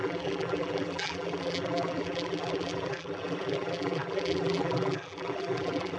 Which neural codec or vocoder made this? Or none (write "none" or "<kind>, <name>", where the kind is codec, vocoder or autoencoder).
vocoder, BigVGAN v2